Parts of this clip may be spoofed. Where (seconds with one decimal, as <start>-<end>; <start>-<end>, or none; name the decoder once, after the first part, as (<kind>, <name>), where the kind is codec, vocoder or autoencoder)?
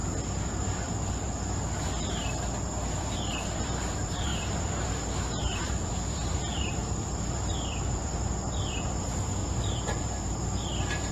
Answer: 2.9-9.4 (vocoder, BigVGAN v2); 10.0-11.1